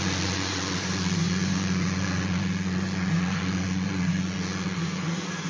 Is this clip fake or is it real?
fake